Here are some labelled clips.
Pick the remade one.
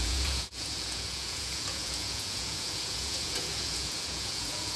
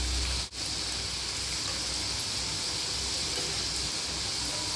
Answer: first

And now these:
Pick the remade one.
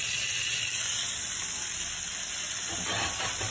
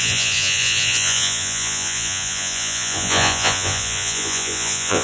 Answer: second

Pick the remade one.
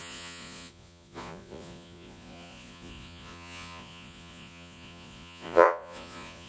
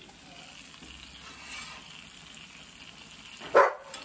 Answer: first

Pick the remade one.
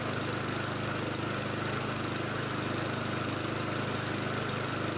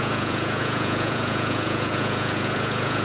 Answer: second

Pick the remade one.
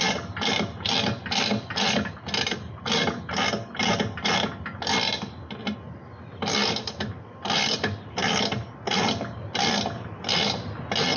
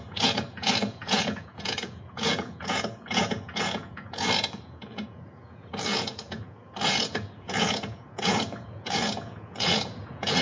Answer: second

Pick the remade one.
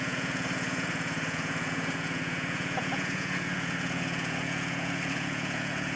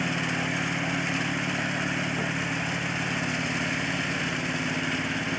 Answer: first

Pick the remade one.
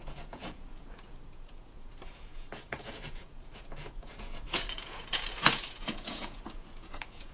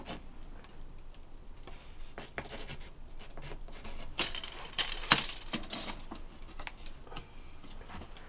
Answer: first